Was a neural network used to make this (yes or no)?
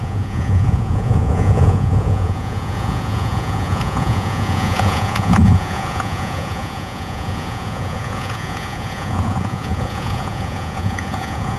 yes